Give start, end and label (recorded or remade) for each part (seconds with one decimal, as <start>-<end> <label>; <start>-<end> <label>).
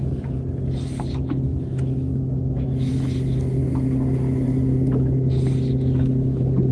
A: 0.0-1.5 recorded; 1.5-2.9 remade; 2.9-6.7 recorded